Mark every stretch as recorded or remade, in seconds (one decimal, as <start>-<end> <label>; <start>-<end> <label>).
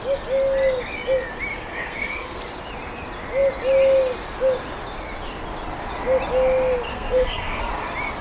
0.0-1.7 recorded; 1.7-2.4 remade; 2.4-6.9 recorded; 6.9-7.7 remade; 7.7-8.2 recorded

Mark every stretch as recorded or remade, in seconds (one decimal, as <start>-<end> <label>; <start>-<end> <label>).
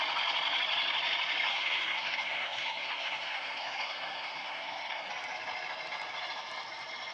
0.0-1.5 recorded; 1.5-5.1 remade; 5.1-7.1 recorded